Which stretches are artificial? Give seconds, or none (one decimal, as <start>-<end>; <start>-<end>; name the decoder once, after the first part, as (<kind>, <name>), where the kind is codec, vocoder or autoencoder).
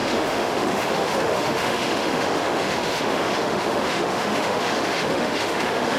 0.0-6.0 (autoencoder, DAC-VAE)